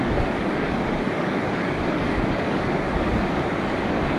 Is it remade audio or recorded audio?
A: remade